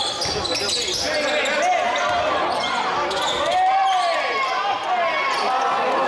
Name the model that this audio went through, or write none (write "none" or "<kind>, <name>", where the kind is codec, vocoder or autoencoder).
none